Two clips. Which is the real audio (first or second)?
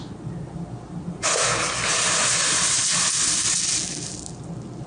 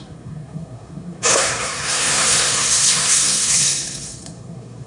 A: first